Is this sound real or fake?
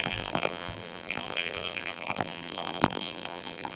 fake